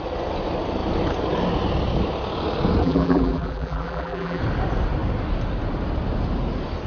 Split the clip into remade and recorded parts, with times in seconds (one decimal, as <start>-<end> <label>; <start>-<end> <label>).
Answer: 0.0-2.8 recorded; 2.8-4.4 remade; 4.4-6.9 recorded